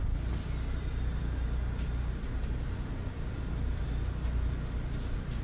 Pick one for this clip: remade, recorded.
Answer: recorded